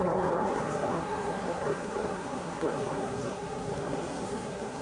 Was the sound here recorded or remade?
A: remade